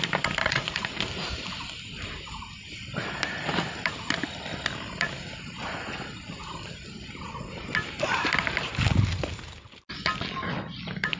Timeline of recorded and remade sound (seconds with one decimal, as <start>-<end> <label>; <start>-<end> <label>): 0.0-0.4 recorded; 0.4-1.0 remade; 1.0-11.2 recorded